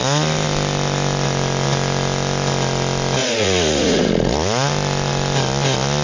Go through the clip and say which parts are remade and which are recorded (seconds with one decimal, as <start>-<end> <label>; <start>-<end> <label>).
0.0-3.2 recorded; 3.2-4.1 remade; 4.1-6.0 recorded